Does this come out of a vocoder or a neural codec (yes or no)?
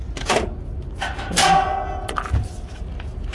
no